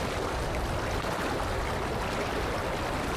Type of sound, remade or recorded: recorded